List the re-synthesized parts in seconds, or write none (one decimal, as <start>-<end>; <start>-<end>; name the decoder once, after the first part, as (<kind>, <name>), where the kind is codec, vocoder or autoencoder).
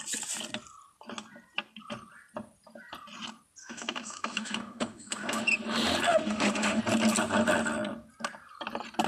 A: 3.6-5.4 (autoencoder, DAC-VAE); 6.1-6.8